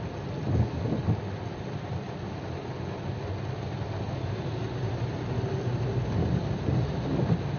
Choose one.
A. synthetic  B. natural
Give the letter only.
B